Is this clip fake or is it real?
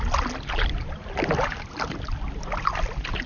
real